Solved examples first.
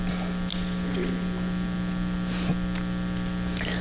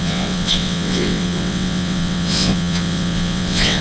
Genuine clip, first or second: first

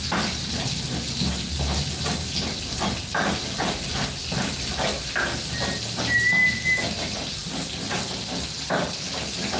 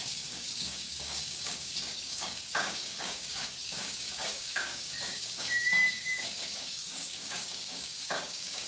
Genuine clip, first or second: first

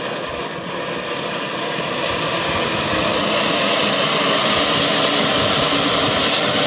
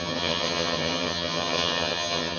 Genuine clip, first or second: first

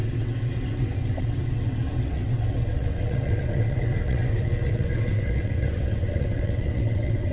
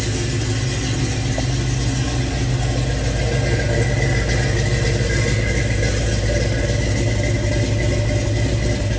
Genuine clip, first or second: second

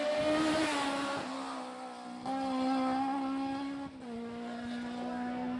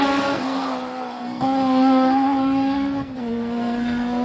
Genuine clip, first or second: first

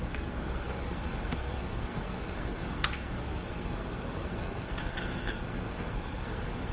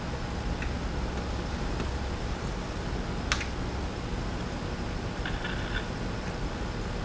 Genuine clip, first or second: second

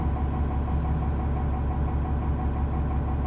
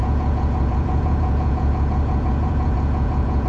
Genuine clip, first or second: first